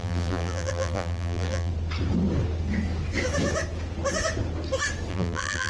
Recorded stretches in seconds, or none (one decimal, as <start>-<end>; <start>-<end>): 1.7-5.1